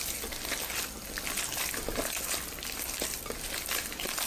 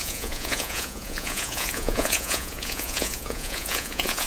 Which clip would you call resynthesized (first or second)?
second